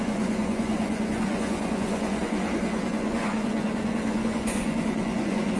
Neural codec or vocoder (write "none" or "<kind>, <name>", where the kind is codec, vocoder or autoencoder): vocoder, Vocos